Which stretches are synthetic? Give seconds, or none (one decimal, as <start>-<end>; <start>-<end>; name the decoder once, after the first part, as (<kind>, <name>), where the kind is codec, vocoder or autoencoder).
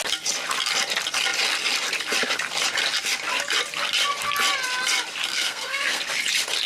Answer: 5.3-6.0 (codec, SNAC)